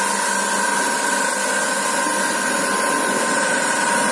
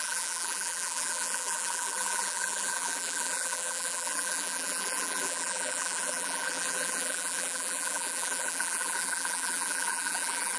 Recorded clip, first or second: first